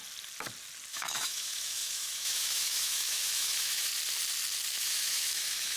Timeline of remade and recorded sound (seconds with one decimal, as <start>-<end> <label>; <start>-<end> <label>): 0.0-0.9 recorded; 0.9-3.9 remade; 3.9-4.8 recorded; 4.8-5.8 remade